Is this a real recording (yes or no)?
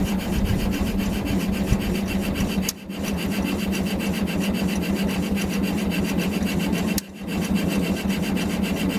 yes